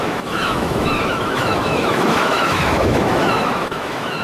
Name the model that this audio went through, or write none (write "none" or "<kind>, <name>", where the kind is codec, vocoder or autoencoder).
autoencoder, DAC-VAE